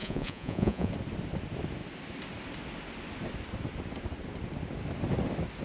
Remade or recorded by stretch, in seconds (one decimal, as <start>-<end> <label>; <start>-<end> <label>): 0.0-0.9 remade; 0.9-5.6 recorded